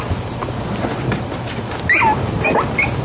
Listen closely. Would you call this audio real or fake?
real